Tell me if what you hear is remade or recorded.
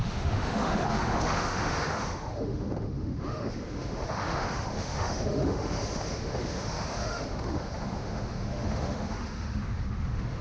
remade